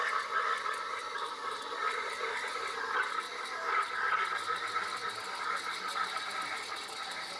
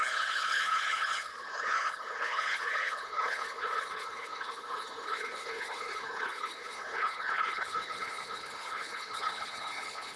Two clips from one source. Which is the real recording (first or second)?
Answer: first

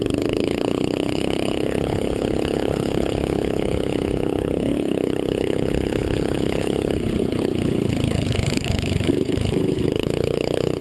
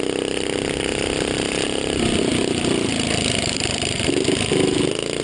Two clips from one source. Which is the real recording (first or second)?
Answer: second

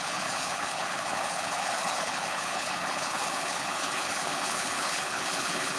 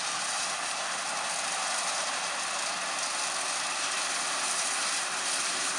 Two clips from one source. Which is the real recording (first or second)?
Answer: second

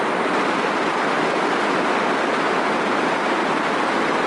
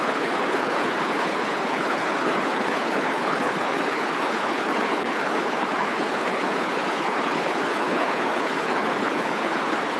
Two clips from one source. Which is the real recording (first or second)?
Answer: first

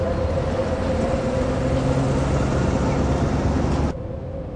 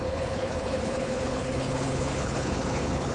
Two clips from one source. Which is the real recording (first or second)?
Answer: first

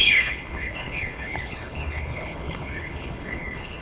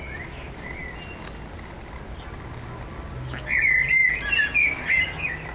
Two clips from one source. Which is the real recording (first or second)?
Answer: second